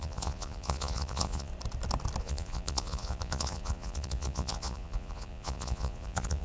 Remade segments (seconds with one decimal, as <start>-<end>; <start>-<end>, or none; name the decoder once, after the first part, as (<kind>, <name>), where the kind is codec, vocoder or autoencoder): 0.0-1.5 (vocoder, Vocos); 2.2-6.4